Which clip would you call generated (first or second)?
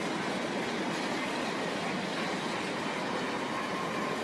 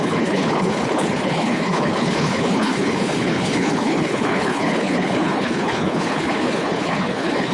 second